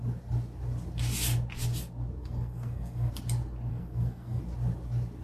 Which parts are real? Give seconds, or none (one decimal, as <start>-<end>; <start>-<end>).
0.0-2.2; 3.1-3.7; 4.4-5.2